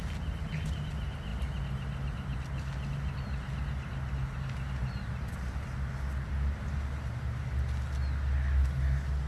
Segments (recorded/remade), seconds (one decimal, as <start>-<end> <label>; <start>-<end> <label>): 0.0-9.3 recorded